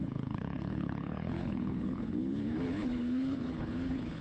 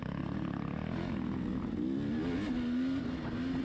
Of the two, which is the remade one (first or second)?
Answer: first